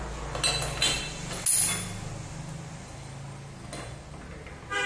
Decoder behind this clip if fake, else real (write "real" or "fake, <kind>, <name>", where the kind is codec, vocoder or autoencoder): real